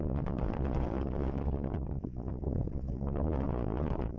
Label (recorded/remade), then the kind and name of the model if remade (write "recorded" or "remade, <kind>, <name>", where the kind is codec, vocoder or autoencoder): remade, vocoder, Vocos